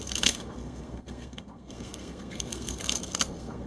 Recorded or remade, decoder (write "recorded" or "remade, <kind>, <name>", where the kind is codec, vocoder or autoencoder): remade, codec, SNAC